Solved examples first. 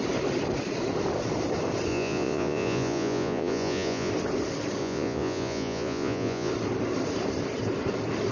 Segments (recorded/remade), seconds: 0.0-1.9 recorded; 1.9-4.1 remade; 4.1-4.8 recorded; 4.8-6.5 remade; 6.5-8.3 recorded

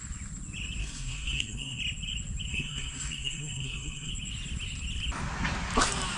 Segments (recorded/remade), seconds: 0.0-0.8 recorded; 0.8-1.8 remade; 1.8-2.5 recorded; 2.5-4.1 remade; 4.1-6.2 recorded

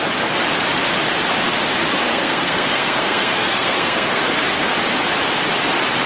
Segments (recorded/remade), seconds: 0.0-2.1 recorded; 2.1-4.2 remade; 4.2-6.1 recorded

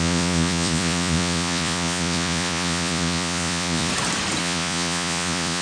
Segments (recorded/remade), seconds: 0.0-3.9 remade; 3.9-4.4 recorded; 4.4-5.6 remade

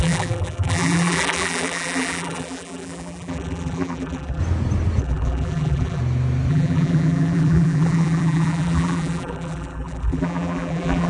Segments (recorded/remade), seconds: 0.0-4.4 remade; 4.4-5.0 recorded; 5.0-6.0 remade; 6.0-6.5 recorded; 6.5-11.1 remade